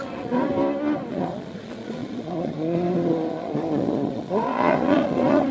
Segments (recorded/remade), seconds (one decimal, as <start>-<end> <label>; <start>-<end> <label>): 0.0-0.5 remade; 0.5-1.1 recorded; 1.1-5.5 remade